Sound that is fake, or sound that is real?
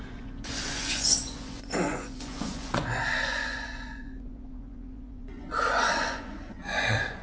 fake